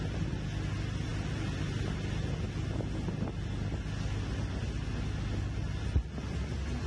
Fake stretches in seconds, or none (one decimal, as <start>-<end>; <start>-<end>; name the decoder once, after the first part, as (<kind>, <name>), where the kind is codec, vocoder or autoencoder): none